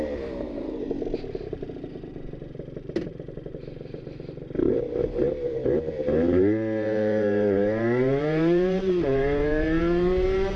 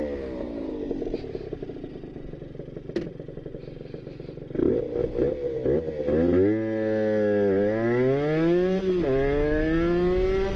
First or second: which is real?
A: second